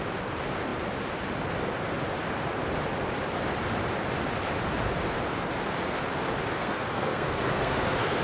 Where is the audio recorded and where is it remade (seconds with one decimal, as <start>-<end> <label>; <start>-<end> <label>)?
0.0-6.6 recorded; 6.6-8.2 remade